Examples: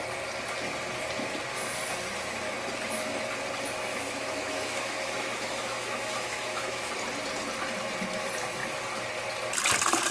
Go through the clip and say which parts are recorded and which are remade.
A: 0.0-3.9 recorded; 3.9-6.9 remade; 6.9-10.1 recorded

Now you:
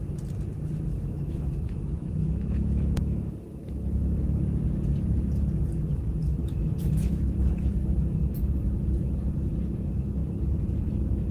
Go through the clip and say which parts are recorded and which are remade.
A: 0.0-0.9 recorded; 0.9-4.4 remade; 4.4-6.2 recorded; 6.2-7.2 remade; 7.2-11.3 recorded